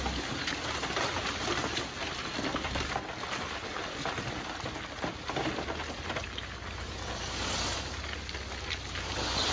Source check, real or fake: real